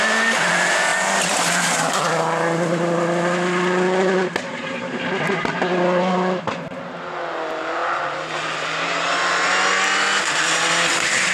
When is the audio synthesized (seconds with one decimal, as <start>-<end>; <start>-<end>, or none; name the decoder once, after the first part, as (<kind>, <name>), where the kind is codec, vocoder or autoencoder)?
none

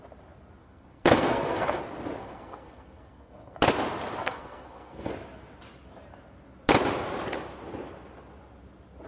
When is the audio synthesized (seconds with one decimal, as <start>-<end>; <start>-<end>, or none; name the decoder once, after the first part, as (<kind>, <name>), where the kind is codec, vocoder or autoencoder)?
0.6-1.8 (codec, SNAC); 2.2-3.6; 4.2-5.1